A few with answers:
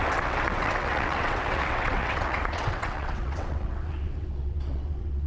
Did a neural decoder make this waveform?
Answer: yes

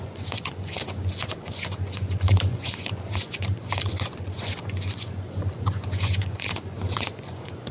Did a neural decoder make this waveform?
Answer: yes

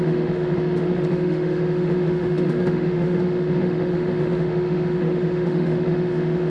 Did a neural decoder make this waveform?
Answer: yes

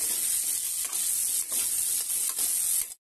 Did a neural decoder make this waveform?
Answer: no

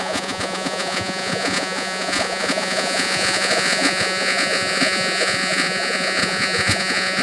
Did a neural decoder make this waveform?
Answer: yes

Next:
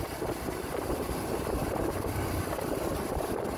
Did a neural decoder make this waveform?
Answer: yes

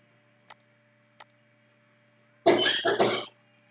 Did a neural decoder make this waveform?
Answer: no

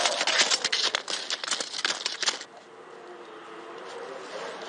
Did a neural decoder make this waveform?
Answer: no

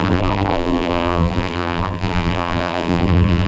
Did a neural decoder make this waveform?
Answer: yes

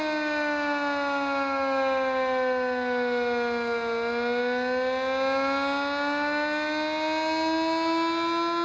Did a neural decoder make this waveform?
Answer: no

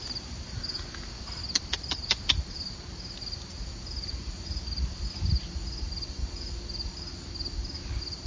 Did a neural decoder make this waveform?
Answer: no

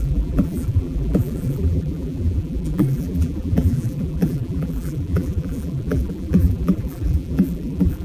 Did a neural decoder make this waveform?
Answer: yes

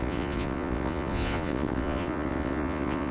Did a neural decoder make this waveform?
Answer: yes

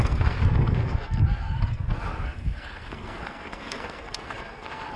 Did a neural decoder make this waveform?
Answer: yes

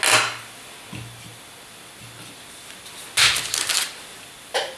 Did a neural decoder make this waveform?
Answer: no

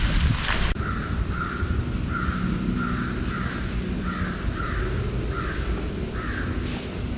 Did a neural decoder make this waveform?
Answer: no